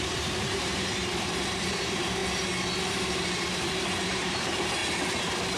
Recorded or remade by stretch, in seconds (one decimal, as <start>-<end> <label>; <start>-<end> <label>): 0.0-2.2 remade; 2.2-2.8 recorded; 2.8-4.8 remade; 4.8-5.6 recorded